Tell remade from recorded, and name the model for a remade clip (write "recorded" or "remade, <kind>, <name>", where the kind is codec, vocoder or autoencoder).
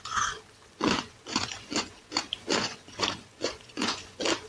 remade, vocoder, Vocos